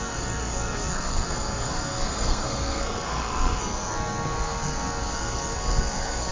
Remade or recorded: remade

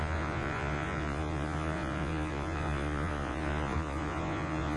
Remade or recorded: remade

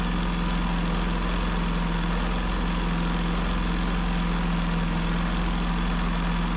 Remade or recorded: recorded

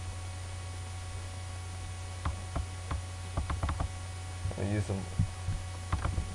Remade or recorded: recorded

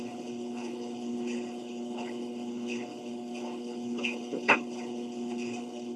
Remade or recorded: remade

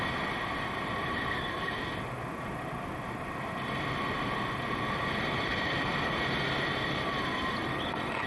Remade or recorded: recorded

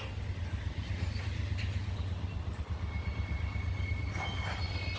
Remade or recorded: recorded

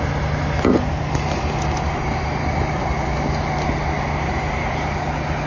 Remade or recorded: recorded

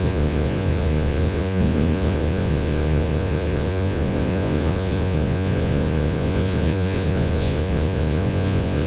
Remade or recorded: remade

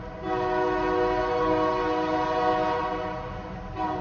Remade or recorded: recorded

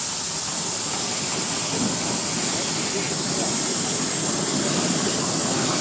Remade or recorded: recorded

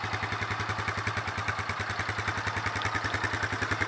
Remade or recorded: recorded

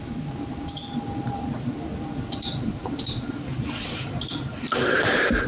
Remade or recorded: remade